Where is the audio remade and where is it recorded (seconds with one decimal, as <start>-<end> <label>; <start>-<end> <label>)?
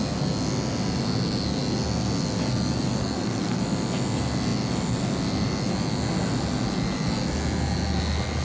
0.0-3.0 recorded; 3.0-3.6 remade; 3.6-8.4 recorded